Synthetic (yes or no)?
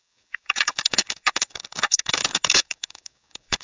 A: yes